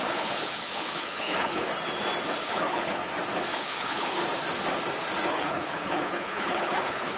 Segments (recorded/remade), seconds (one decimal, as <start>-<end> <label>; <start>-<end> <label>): 0.0-1.7 remade; 1.7-2.4 recorded; 2.4-3.0 remade; 3.0-3.5 recorded; 3.5-4.2 remade; 4.2-5.3 recorded; 5.3-7.2 remade